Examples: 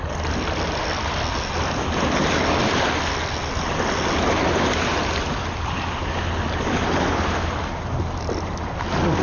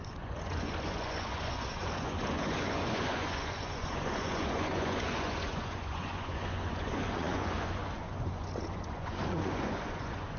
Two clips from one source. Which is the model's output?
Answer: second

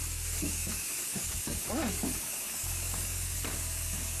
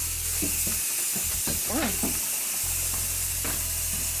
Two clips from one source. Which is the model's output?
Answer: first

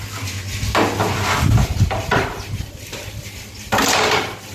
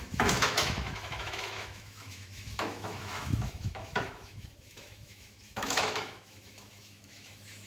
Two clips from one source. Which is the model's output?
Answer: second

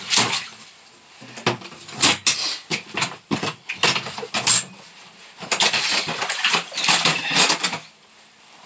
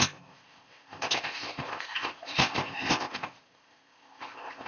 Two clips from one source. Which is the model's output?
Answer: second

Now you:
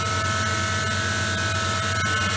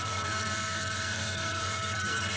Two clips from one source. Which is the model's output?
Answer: second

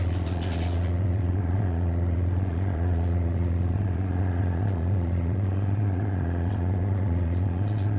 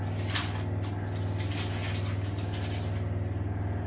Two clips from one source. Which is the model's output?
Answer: first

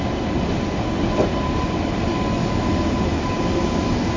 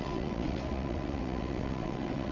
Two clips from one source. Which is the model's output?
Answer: second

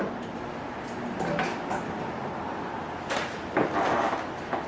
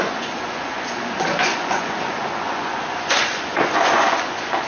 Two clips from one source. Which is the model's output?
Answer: second